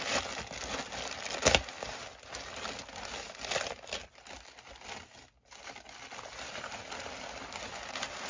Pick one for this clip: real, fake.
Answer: real